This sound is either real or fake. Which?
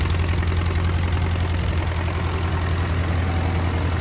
real